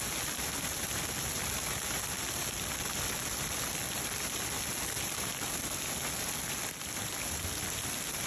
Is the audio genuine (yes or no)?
yes